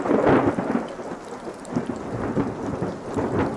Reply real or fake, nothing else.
real